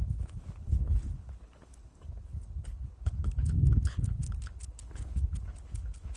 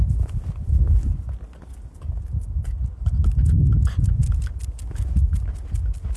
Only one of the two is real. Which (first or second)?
second